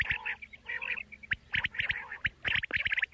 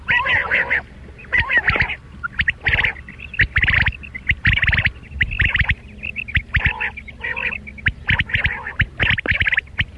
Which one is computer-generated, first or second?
second